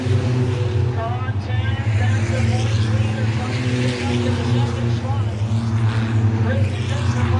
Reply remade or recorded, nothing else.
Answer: recorded